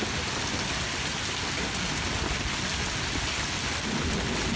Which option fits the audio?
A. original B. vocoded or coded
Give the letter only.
A